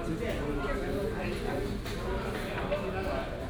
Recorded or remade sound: recorded